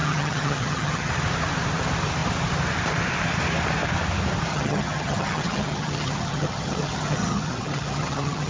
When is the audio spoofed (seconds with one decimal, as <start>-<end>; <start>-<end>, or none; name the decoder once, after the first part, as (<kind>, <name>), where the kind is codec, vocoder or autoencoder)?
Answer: 0.0-1.1 (vocoder, HiFi-GAN); 4.5-8.5